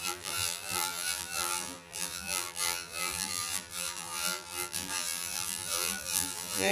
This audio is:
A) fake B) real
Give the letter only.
A